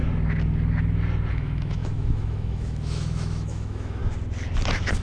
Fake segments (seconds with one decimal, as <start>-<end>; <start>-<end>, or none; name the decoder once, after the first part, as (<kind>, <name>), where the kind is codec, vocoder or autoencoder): 1.3-4.0 (autoencoder, DAC-VAE)